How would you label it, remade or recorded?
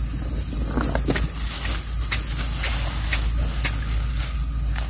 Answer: recorded